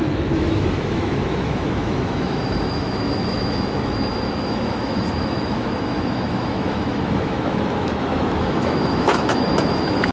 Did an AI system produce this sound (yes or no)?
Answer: yes